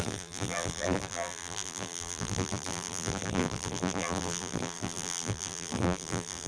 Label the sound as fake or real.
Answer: fake